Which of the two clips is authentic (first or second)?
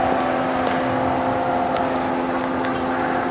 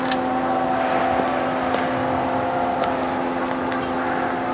second